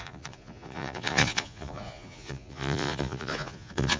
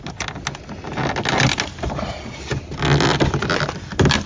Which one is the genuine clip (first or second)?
second